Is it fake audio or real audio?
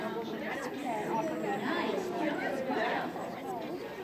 real